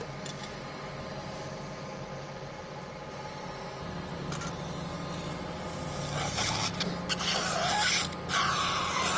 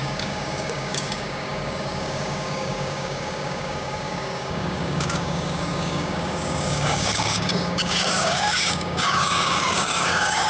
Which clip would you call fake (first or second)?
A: second